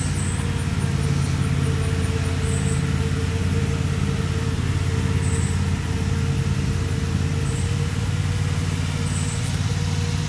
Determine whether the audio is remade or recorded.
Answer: recorded